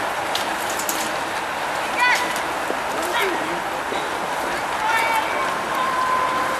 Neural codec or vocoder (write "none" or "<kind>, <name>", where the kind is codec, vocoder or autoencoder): none